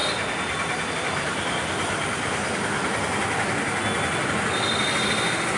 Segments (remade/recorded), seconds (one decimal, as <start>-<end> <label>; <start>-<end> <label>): 0.0-5.6 recorded